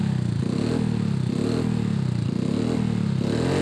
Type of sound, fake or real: real